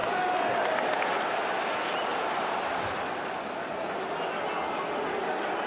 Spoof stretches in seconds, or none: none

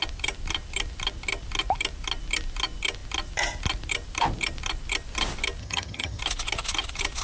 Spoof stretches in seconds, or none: 5.6-6.2

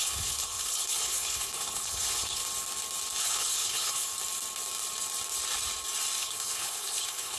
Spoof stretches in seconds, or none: 0.0-2.4; 3.2-4.1; 6.2-7.4

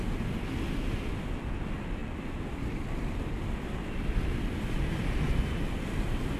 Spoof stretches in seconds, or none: none

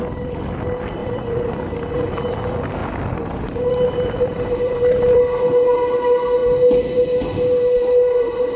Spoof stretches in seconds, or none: 1.0-1.6; 2.8-5.2

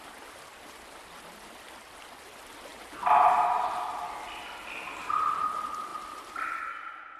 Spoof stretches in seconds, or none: none

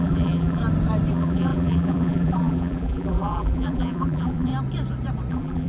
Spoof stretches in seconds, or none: 0.0-0.6; 1.1-4.5; 5.3-5.7